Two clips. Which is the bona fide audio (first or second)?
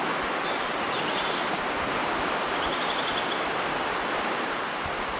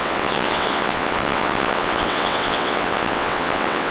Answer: first